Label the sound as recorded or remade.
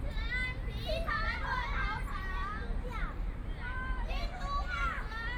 remade